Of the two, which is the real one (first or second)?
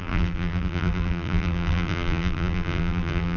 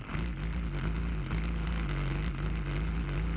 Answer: second